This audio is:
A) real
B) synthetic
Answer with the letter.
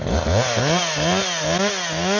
A